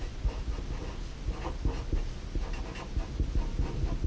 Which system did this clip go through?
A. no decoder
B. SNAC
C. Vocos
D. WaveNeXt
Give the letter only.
A